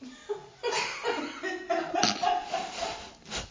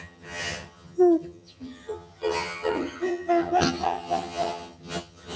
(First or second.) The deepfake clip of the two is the second